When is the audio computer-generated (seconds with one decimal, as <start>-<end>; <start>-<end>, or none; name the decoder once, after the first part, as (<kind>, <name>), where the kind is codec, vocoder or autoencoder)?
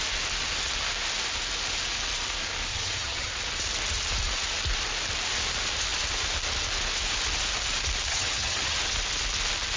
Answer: 2.7-3.3 (vocoder, HiFi-GAN); 8.1-8.8